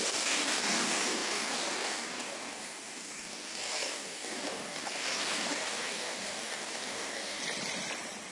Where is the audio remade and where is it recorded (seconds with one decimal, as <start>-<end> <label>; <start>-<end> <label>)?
0.0-7.4 remade; 7.4-8.3 recorded